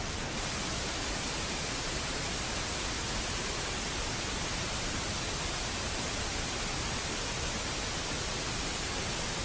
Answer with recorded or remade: recorded